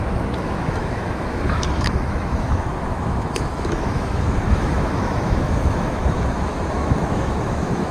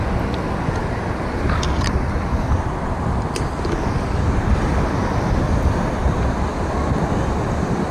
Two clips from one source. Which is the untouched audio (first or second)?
second